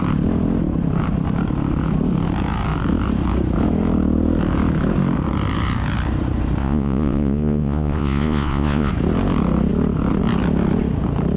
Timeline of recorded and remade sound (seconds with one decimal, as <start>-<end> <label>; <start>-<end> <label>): 0.0-6.6 recorded; 6.6-8.9 remade; 8.9-11.4 recorded